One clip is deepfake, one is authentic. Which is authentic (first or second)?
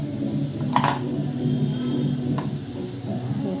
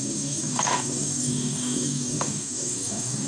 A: first